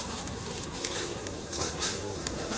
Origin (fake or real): fake